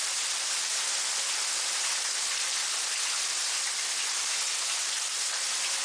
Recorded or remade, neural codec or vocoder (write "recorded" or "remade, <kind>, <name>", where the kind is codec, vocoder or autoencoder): recorded